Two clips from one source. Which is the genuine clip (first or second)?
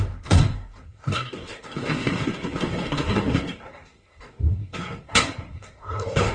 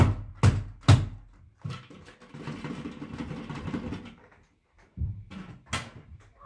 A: second